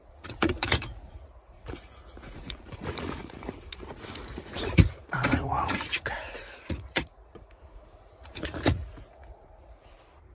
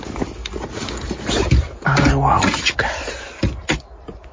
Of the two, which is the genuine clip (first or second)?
second